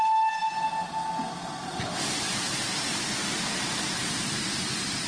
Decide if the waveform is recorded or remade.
recorded